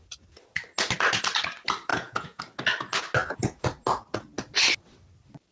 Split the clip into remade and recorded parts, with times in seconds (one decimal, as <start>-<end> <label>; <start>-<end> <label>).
0.0-1.9 recorded; 1.9-2.4 remade; 2.4-5.5 recorded

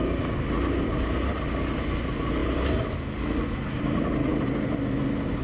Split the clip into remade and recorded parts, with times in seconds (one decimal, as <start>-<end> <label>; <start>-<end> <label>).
0.0-5.4 recorded

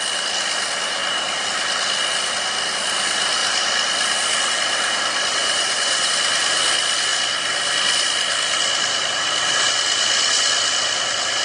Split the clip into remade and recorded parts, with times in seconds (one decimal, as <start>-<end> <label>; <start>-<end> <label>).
0.0-5.4 recorded; 5.4-6.1 remade; 6.1-11.4 recorded

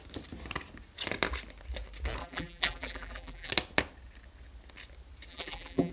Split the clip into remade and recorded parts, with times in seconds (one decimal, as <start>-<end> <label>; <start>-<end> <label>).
0.0-2.2 recorded; 2.2-3.5 remade; 3.5-5.3 recorded; 5.3-5.9 remade

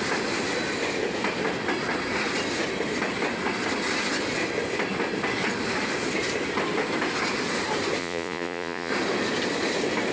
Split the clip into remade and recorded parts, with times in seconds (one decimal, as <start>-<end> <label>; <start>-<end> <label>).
0.0-8.0 recorded; 8.0-8.9 remade; 8.9-10.1 recorded